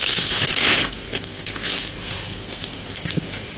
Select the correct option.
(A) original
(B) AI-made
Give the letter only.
B